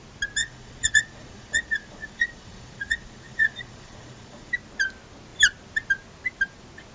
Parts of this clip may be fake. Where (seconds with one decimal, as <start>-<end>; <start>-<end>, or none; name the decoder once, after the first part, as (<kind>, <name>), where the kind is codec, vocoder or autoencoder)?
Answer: 0.4-4.5 (vocoder, Vocos)